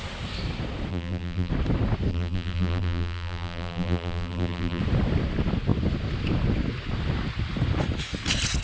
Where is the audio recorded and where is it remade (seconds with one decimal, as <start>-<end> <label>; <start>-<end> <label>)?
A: 0.0-0.9 recorded; 0.9-1.5 remade; 1.5-2.1 recorded; 2.1-4.8 remade; 4.8-8.6 recorded

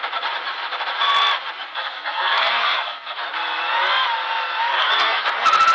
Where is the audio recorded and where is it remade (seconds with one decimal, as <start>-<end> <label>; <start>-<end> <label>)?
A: 0.0-1.7 recorded; 1.7-3.2 remade; 3.2-4.7 recorded; 4.7-5.2 remade; 5.2-5.7 recorded

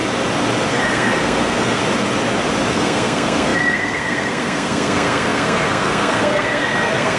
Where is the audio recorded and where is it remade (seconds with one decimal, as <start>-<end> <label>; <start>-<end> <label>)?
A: 0.0-0.7 recorded; 0.7-1.8 remade; 1.8-2.7 recorded; 2.7-7.2 remade

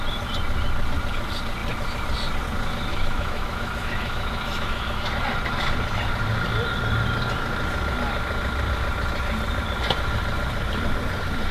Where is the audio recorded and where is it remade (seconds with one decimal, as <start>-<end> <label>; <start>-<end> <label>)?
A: 0.0-2.9 recorded; 2.9-5.1 remade; 5.1-11.5 recorded

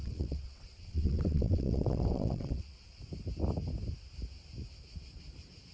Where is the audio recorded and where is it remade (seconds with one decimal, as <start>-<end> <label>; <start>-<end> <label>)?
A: 0.0-3.0 remade; 3.0-5.7 recorded

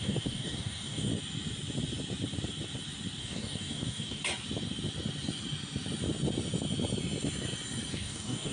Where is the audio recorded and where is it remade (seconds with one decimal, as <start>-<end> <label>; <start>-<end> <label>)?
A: 0.0-1.1 remade; 1.1-3.2 recorded; 3.2-4.2 remade; 4.2-7.9 recorded; 7.9-8.5 remade

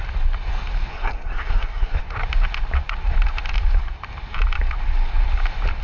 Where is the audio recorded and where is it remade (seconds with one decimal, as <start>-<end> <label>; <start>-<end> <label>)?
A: 0.0-0.9 recorded; 0.9-2.0 remade; 2.0-5.8 recorded